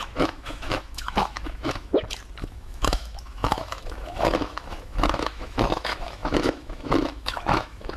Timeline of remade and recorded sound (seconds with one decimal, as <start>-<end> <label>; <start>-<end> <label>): 0.0-1.9 remade; 1.9-2.4 recorded; 2.4-8.0 remade